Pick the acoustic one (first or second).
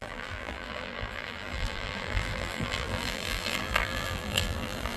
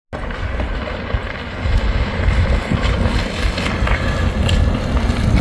second